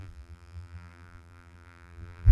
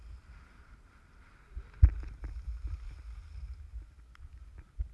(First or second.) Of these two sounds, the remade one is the first